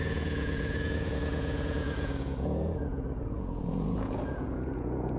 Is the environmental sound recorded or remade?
remade